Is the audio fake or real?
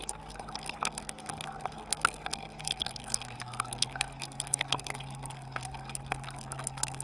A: fake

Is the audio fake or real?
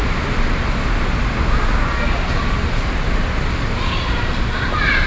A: real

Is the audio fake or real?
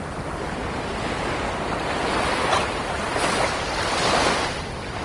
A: real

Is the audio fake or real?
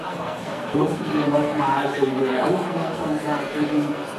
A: fake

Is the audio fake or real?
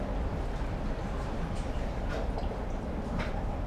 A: real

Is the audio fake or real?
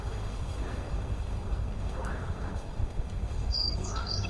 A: fake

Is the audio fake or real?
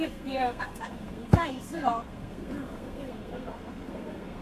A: fake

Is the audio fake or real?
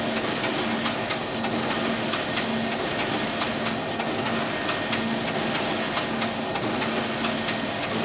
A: real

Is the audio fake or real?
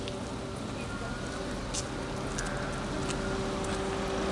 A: real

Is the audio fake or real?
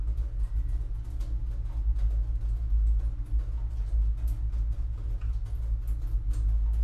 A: real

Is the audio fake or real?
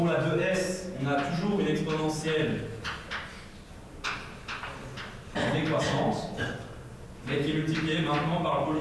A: real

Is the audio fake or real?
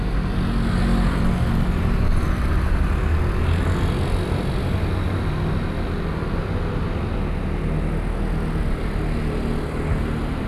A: real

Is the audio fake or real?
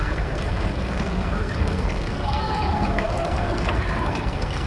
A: fake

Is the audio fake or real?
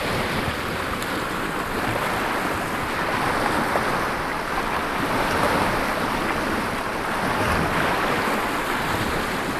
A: real